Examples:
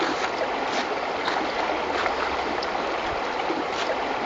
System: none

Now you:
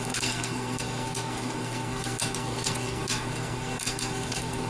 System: codec, SNAC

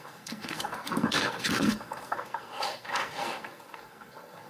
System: codec, SNAC